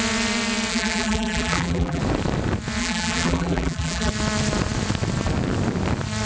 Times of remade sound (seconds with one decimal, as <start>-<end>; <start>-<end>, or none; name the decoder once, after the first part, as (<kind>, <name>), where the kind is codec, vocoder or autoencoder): 0.7-2.0 (vocoder, BigVGAN v2); 2.8-4.1

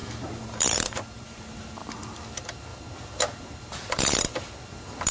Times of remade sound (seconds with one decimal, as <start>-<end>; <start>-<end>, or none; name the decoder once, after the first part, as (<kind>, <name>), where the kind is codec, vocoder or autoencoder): 0.0-1.4 (vocoder, BigVGAN v2); 1.8-2.3

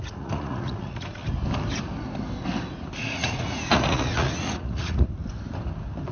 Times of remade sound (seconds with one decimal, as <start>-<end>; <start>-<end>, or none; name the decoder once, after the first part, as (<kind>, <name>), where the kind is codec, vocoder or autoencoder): 0.0-1.2 (vocoder, Vocos); 3.0-5.2

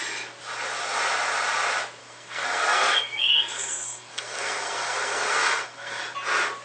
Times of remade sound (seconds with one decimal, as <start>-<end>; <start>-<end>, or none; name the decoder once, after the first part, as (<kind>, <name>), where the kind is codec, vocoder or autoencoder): 2.0-6.0 (codec, SNAC)

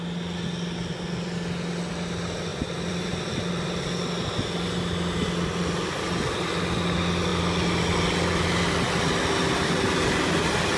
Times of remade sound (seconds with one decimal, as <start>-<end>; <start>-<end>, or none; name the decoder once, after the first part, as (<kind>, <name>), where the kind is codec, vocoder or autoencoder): 2.5-3.5 (vocoder, BigVGAN v2)

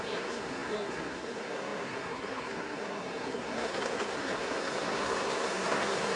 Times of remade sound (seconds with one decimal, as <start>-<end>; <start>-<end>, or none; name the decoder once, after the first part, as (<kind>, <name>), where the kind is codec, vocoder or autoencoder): 0.0-6.2 (codec, SNAC)

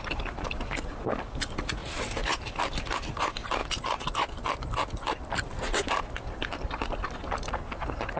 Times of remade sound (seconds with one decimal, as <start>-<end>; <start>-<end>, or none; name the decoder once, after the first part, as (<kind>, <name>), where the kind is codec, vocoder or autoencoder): 3.6-7.5 (vocoder, BigVGAN v2)